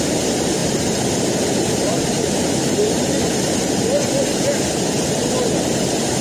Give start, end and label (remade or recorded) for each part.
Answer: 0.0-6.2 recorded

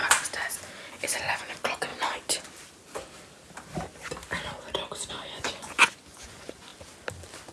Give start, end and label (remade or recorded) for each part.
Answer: 0.0-0.8 recorded; 0.8-1.9 remade; 1.9-5.1 recorded; 5.1-6.7 remade; 6.7-7.5 recorded